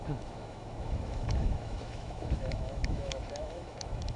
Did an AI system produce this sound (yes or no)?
yes